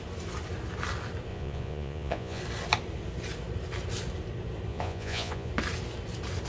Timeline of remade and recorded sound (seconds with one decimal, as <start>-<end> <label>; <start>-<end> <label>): 0.0-1.3 recorded; 1.3-2.4 remade; 2.4-4.7 recorded; 4.7-5.5 remade; 5.5-6.5 recorded